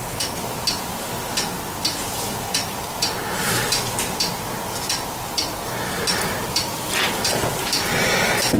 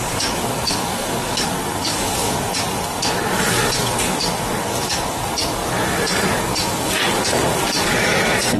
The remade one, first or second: second